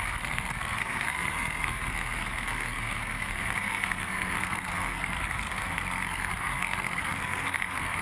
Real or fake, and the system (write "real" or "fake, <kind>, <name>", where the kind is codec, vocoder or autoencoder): fake, codec, SNAC